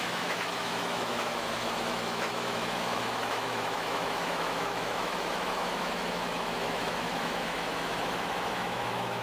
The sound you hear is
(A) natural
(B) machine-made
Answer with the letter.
B